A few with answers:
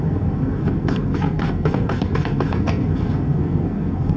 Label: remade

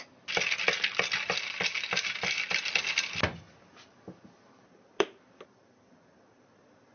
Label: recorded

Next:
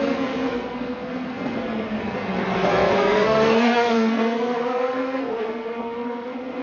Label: remade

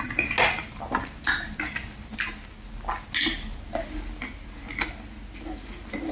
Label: recorded